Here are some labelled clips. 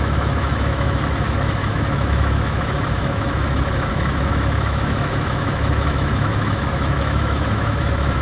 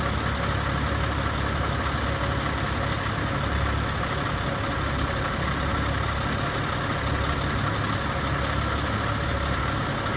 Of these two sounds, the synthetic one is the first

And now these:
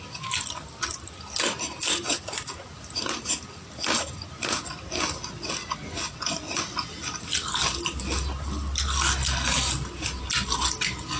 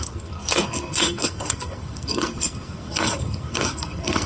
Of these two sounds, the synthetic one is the second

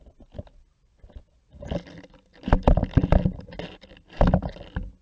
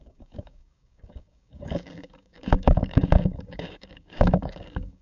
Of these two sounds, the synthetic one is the second